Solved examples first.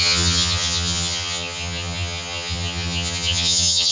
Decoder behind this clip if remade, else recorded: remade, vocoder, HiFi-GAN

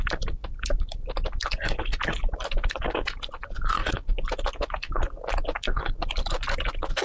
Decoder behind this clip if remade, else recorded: recorded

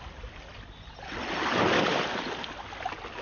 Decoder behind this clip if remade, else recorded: recorded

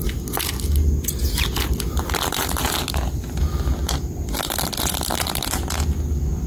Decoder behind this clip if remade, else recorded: recorded